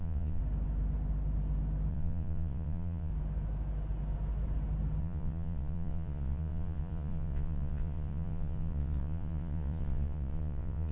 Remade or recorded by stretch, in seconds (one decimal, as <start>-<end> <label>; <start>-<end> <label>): 0.0-0.4 remade; 0.4-1.9 recorded; 1.9-3.1 remade; 3.1-5.0 recorded; 5.0-10.9 remade